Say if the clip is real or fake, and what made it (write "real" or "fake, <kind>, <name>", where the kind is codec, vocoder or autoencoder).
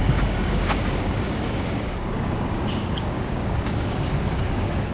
fake, codec, DAC